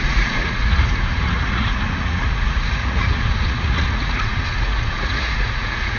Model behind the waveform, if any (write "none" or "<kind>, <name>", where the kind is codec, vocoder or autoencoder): vocoder, Vocos